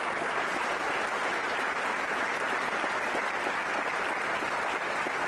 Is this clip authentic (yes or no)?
yes